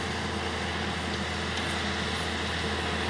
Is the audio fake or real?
real